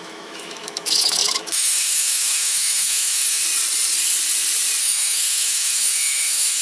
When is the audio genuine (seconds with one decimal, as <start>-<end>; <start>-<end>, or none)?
3.4-4.8